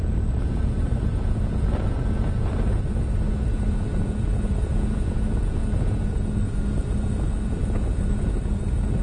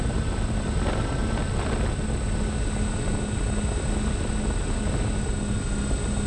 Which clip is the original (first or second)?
second